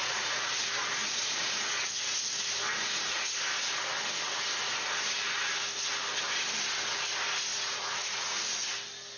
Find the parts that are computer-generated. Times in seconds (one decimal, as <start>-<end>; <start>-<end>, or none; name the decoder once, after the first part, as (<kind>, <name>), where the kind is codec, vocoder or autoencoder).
0.0-0.6 (vocoder, Vocos); 1.0-1.9; 7.5-8.4